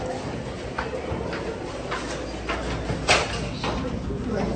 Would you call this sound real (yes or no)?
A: yes